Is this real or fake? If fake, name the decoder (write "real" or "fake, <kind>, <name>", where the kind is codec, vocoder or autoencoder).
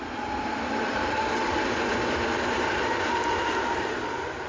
fake, vocoder, BigVGAN v2